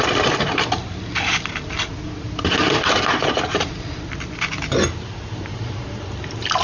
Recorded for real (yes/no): yes